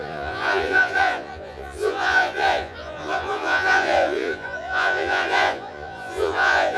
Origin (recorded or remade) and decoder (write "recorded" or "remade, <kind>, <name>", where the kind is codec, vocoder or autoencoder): remade, vocoder, Vocos